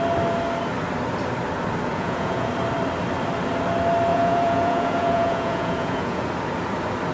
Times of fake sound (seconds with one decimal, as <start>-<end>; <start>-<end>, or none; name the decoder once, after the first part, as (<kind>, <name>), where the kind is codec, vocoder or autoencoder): 1.9-2.5 (vocoder, Vocos); 4.1-6.3